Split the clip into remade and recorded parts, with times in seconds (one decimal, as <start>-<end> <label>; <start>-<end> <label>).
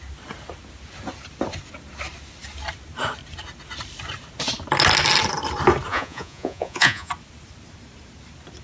0.0-5.9 recorded; 5.9-7.1 remade; 7.1-8.6 recorded